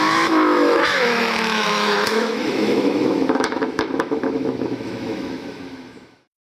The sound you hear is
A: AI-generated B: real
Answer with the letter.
A